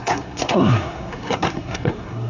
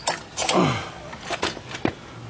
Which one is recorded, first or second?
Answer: second